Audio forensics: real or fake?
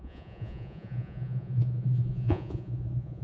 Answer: fake